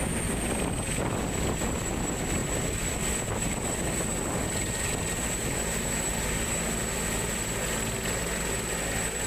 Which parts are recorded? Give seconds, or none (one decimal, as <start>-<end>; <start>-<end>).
0.0-9.3